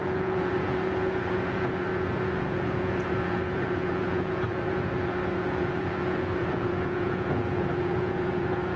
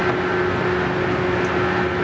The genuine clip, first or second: second